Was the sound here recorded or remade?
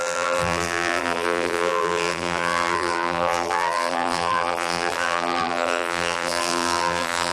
remade